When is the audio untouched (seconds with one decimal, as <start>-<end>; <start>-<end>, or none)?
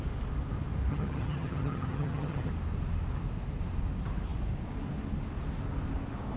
0.0-0.9; 2.5-6.4